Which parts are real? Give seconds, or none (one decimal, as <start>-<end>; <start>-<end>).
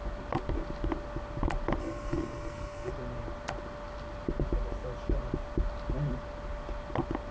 0.0-1.8; 2.9-7.3